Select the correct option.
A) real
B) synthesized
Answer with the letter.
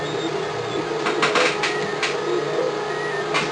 A